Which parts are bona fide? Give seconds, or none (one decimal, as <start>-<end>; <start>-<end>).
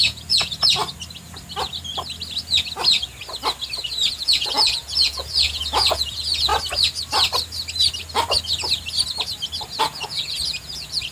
0.8-4.1; 6.5-9.8